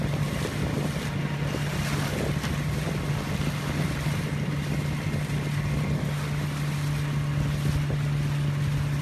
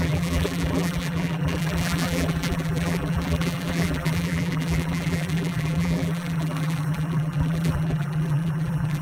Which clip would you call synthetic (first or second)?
second